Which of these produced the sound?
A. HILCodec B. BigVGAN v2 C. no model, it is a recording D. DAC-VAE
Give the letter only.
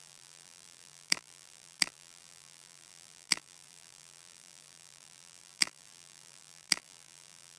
B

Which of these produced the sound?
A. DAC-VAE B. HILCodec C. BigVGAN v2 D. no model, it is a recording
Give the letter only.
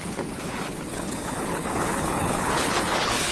B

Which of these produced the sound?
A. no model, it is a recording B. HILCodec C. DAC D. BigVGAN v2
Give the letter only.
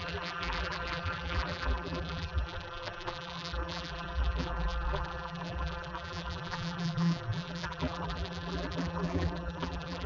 D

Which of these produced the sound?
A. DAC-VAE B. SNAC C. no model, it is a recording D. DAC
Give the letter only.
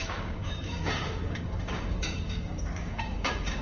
D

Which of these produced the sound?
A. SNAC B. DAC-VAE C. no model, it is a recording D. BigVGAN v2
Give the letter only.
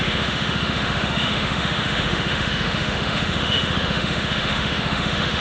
B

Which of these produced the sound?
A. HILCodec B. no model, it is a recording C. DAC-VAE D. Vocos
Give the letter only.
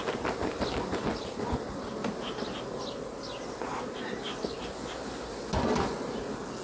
B